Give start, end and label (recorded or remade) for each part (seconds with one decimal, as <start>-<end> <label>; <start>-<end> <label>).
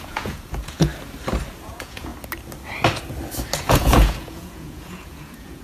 0.0-0.9 remade; 0.9-1.6 recorded; 1.6-2.1 remade; 2.1-3.6 recorded; 3.6-5.6 remade